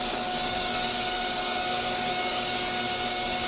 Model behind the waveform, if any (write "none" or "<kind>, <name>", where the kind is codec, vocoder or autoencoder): codec, DAC